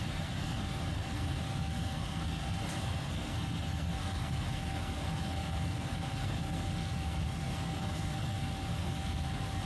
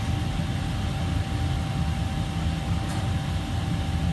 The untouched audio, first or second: second